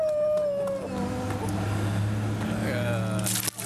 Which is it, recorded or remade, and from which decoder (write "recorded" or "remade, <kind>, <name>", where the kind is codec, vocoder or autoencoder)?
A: recorded